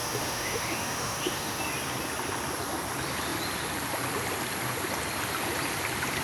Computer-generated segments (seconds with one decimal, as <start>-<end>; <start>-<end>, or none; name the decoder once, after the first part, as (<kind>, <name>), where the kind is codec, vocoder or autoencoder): 0.0-1.6 (autoencoder, DAC-VAE)